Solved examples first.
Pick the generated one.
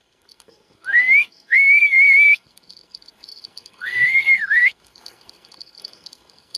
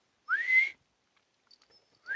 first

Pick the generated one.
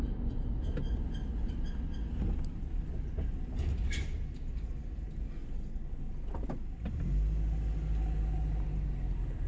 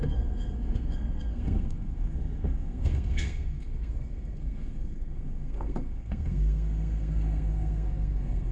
second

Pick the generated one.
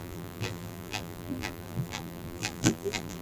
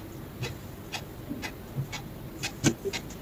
first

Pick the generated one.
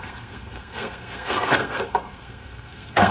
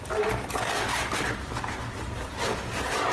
first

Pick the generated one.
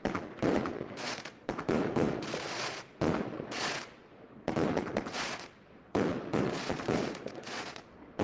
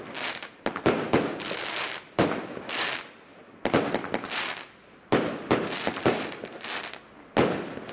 first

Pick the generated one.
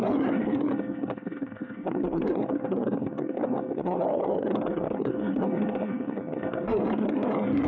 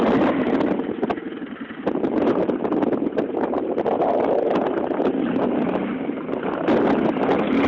first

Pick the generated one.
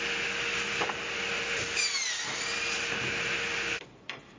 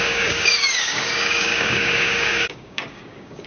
second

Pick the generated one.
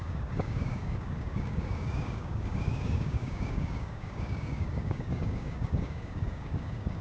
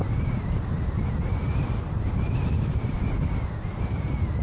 first